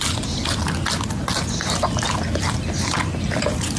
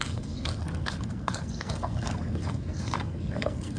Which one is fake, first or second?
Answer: second